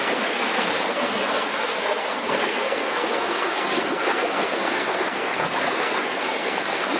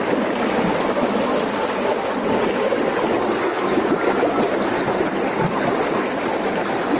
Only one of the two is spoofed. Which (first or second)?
first